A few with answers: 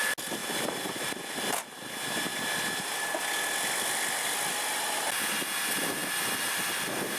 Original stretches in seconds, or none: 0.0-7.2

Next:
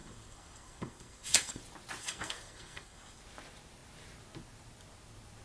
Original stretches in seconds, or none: 1.6-2.0; 3.2-5.4

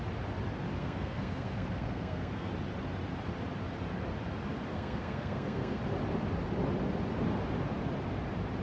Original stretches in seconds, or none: 0.0-0.8; 2.5-4.7; 5.8-8.6